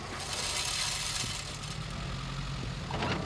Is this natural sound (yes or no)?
yes